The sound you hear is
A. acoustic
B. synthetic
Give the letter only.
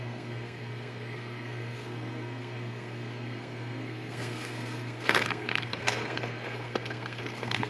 B